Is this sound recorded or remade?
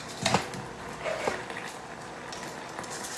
recorded